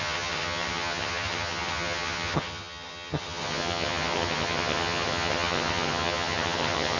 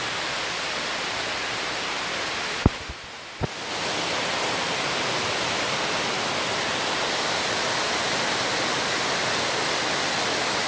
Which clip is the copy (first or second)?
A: first